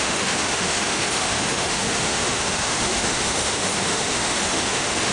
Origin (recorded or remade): remade